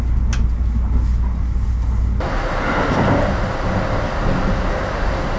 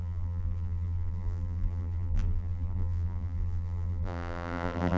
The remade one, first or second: second